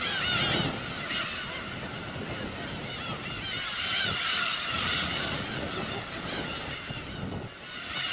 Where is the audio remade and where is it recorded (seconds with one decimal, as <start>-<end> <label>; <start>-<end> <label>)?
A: 0.0-3.9 recorded; 3.9-5.7 remade; 5.7-8.1 recorded

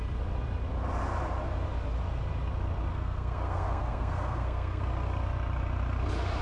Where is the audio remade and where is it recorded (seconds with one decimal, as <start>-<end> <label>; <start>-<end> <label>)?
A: 0.0-2.9 recorded; 2.9-4.8 remade; 4.8-6.4 recorded

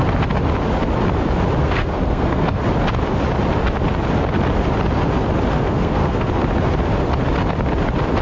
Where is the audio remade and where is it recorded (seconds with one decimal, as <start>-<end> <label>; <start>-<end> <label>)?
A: 0.0-1.6 recorded; 1.6-2.6 remade; 2.6-5.6 recorded; 5.6-6.3 remade; 6.3-8.2 recorded

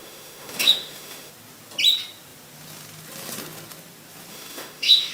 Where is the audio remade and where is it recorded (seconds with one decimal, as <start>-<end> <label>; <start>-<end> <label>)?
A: 0.0-1.3 remade; 1.3-4.3 recorded; 4.3-5.1 remade

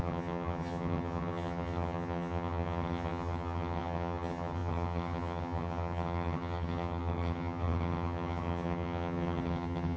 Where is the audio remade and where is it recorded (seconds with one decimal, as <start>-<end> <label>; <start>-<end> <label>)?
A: 0.0-10.0 remade